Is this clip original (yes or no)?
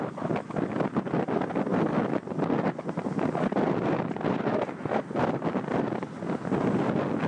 yes